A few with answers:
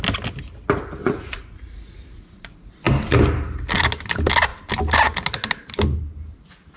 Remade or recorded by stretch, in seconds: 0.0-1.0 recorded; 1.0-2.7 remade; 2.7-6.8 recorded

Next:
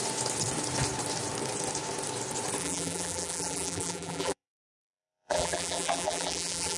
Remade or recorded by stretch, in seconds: 0.0-2.6 recorded; 2.6-6.8 remade